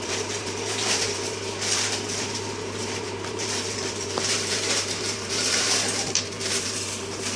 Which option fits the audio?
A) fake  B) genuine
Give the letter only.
A